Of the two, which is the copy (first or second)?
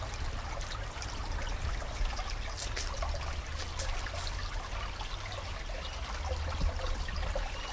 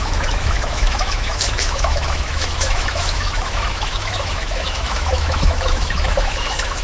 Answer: second